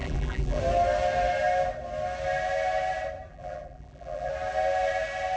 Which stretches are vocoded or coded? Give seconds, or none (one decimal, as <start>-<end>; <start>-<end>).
0.0-0.6; 3.3-4.3